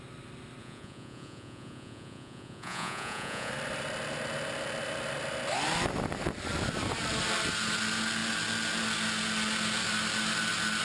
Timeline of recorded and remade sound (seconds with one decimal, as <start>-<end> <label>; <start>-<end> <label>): 0.0-0.6 recorded; 0.6-3.5 remade; 3.5-10.8 recorded